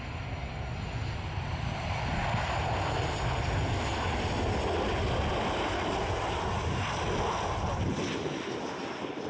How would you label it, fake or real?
real